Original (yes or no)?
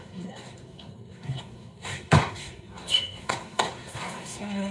no